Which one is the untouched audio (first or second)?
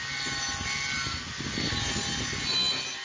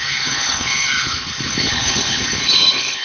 first